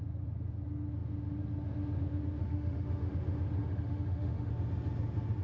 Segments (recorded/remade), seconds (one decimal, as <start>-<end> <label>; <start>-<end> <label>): 0.0-2.4 recorded; 2.4-3.1 remade; 3.1-3.6 recorded; 3.6-4.5 remade; 4.5-5.4 recorded